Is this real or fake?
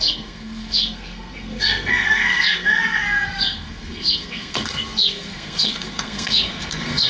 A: fake